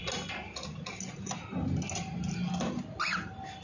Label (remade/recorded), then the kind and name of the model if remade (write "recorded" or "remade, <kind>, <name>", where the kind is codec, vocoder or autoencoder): recorded